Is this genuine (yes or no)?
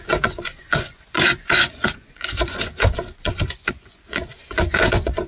no